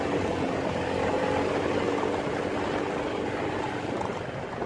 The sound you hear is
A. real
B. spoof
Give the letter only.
A